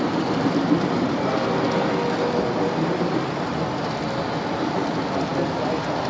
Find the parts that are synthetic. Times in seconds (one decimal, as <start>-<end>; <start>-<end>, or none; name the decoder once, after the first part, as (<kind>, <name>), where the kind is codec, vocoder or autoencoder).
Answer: none